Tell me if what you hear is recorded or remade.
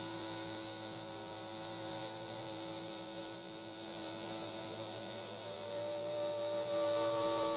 remade